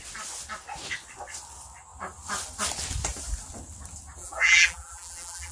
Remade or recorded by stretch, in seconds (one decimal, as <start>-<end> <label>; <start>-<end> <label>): 0.0-4.2 recorded; 4.2-5.5 remade